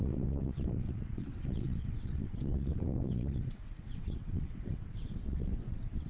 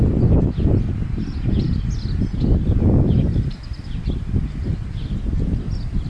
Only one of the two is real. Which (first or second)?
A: second